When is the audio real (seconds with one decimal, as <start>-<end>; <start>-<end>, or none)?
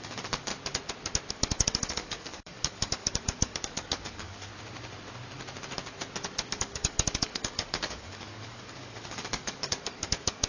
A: 0.5-1.3; 4.5-6.5